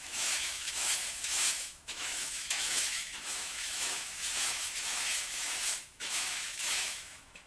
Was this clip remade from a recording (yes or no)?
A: yes